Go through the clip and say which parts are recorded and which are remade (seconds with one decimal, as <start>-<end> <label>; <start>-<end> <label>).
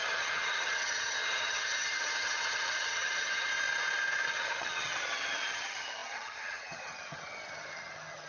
0.0-3.5 remade; 3.5-4.3 recorded; 4.3-8.3 remade